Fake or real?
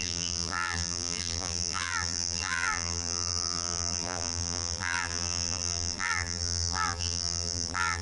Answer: fake